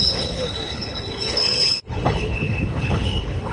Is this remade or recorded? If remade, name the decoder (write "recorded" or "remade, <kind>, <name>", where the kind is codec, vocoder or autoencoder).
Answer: remade, codec, HILCodec